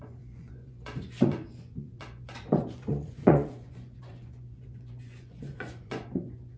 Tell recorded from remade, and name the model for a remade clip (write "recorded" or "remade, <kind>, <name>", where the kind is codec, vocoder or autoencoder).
remade, vocoder, Vocos